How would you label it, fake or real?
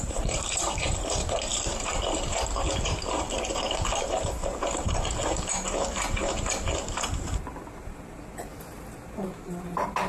fake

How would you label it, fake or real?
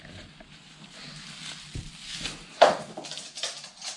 real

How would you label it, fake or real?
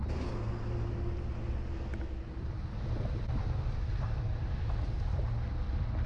real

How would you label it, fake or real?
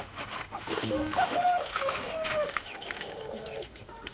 fake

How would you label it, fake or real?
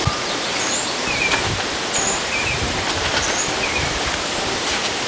fake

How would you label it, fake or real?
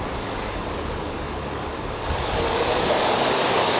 fake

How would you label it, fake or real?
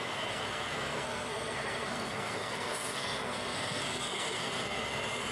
fake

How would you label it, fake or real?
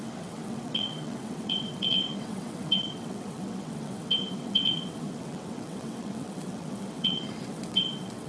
fake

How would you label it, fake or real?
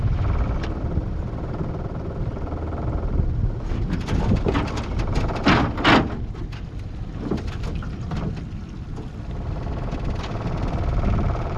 real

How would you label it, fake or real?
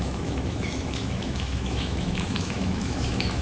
fake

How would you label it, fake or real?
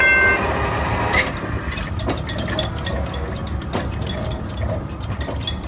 real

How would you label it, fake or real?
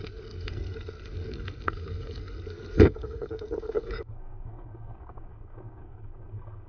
fake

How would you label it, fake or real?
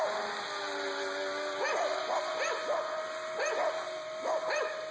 real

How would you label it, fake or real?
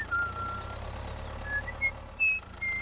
real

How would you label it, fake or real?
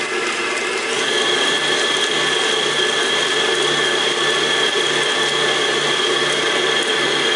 real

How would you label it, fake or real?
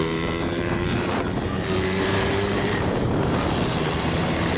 fake